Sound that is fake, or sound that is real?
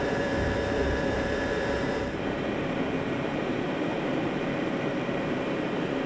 fake